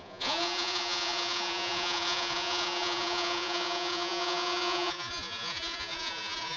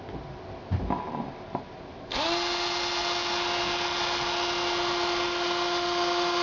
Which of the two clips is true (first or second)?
second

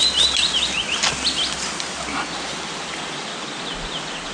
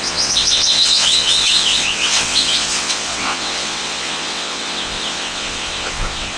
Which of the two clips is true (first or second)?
first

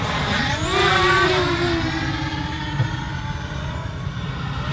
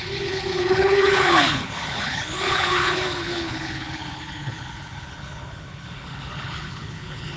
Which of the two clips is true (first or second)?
first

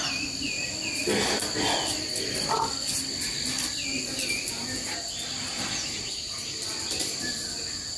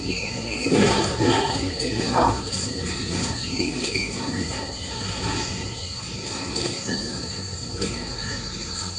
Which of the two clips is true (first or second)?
first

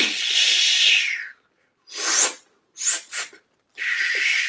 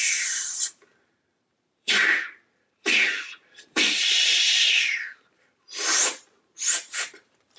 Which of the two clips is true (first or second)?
first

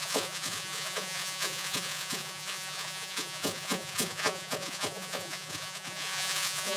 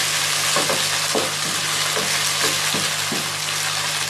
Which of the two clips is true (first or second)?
second